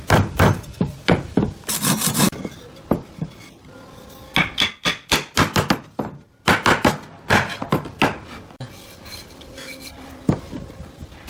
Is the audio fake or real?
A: real